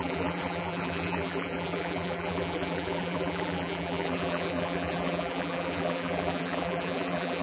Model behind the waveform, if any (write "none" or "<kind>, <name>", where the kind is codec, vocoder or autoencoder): vocoder, BigVGAN v2